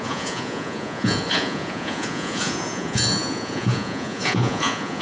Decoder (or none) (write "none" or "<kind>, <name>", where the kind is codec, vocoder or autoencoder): vocoder, Vocos